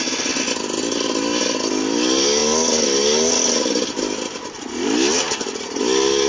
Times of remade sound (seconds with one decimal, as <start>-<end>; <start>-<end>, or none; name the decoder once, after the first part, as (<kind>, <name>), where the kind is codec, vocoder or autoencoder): none